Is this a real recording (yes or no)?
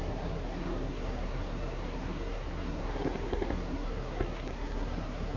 no